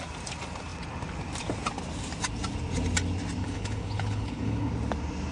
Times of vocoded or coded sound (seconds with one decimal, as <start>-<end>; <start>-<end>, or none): 3.4-4.7